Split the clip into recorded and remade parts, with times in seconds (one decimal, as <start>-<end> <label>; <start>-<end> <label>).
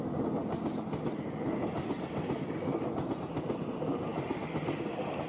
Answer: 0.0-5.3 recorded